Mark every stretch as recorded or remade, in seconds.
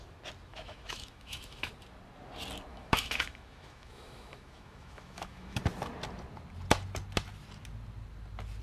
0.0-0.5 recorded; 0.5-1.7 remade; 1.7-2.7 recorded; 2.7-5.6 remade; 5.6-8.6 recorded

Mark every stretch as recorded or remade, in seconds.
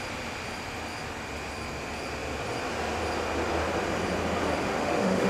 0.0-4.6 recorded; 4.6-5.3 remade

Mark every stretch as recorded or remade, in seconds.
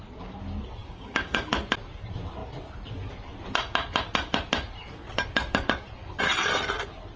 0.0-0.8 recorded; 0.8-1.5 remade; 1.5-7.2 recorded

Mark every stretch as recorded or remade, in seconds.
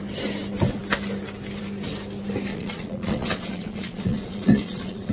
0.0-2.5 recorded; 2.5-5.1 remade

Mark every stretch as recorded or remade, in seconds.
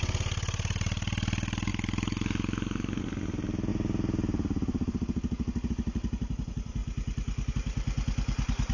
0.0-1.7 recorded; 1.7-3.0 remade; 3.0-8.7 recorded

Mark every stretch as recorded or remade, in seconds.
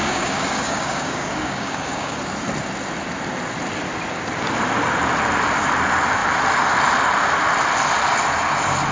0.0-2.2 remade; 2.2-8.9 recorded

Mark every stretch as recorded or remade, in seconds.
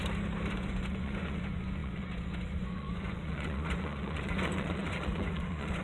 0.0-0.5 recorded; 0.5-5.8 remade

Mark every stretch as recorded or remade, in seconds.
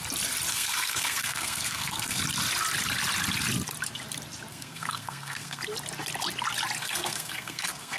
0.0-0.5 recorded; 0.5-2.2 remade; 2.2-4.5 recorded; 4.5-5.6 remade; 5.6-6.8 recorded; 6.8-8.0 remade